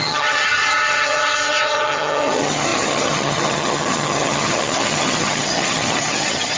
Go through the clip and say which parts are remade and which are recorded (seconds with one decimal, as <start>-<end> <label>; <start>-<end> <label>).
0.0-6.6 remade